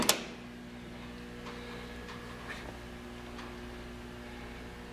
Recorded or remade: recorded